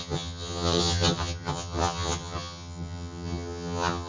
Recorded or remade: remade